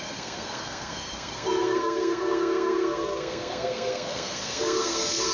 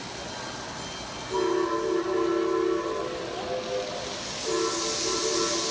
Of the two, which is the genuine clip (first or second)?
second